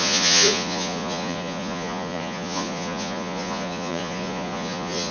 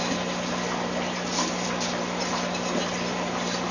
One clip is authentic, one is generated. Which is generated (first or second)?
first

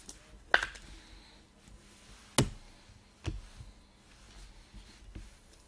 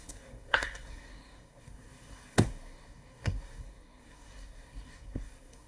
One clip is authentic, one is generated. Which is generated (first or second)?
second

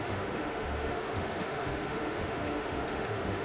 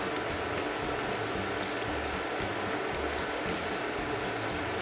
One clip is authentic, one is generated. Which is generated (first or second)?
first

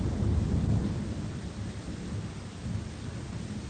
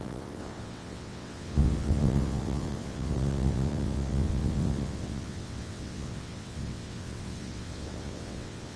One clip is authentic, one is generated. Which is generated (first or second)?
second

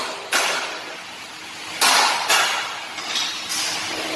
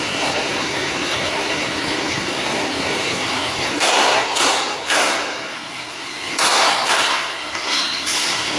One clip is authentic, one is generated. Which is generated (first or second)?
second